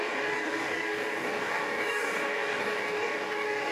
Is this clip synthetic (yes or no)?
yes